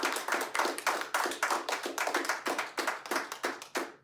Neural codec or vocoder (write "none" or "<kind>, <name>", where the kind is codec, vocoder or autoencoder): none